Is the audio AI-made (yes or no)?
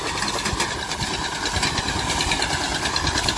no